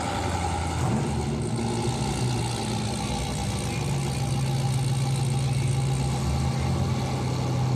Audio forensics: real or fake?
real